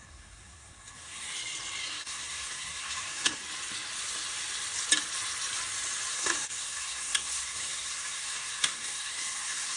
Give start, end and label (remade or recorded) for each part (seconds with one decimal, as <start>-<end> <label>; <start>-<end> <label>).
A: 0.0-1.3 remade; 1.3-1.8 recorded; 1.8-3.4 remade; 3.4-6.1 recorded; 6.1-9.8 remade

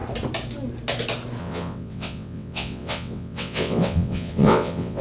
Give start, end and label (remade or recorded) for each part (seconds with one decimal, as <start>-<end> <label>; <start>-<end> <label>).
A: 0.0-1.4 recorded; 1.4-5.0 remade

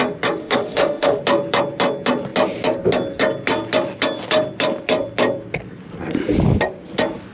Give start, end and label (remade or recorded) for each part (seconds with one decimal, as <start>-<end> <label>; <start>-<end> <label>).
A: 0.0-0.4 recorded; 0.4-1.2 remade; 1.2-7.3 recorded

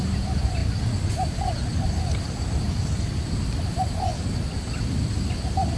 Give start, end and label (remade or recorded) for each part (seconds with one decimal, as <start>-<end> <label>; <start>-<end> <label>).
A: 0.0-0.6 remade; 0.6-1.1 recorded; 1.1-1.6 remade; 1.6-3.2 recorded; 3.2-4.1 remade; 4.1-5.1 recorded; 5.1-5.8 remade

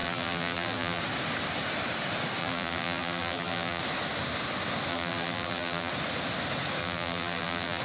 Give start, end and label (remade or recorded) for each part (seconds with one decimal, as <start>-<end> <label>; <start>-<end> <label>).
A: 0.0-1.0 remade; 1.0-2.4 recorded; 2.4-3.8 remade; 3.8-4.9 recorded; 4.9-5.9 remade; 5.9-6.8 recorded; 6.8-7.8 remade

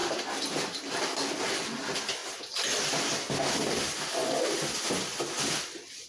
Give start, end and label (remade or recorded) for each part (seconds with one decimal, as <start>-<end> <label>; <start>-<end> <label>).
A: 0.0-6.1 recorded